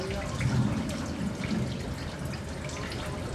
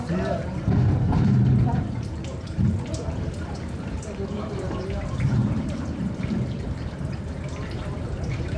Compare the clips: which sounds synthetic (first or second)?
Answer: second